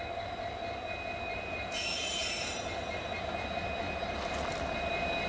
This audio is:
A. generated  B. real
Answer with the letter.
B